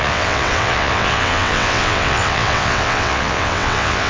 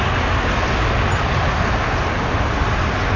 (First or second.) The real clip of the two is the second